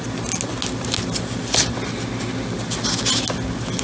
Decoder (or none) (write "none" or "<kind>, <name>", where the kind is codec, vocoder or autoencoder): none